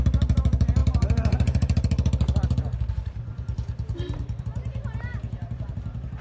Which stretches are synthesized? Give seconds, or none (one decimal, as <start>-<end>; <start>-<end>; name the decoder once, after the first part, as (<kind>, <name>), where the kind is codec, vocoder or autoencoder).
0.0-6.2 (vocoder, BigVGAN v2)